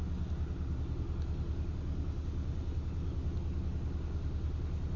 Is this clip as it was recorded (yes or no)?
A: yes